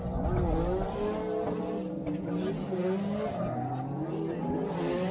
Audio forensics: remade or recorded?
recorded